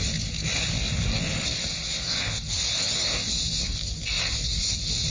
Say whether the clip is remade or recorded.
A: recorded